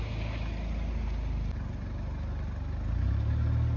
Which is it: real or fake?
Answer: real